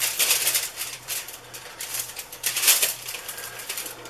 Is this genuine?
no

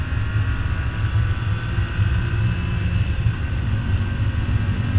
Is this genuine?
yes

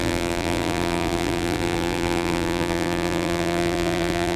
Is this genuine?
no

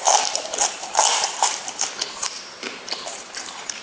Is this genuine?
no